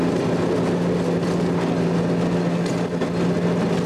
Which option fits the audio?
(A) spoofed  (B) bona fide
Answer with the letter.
B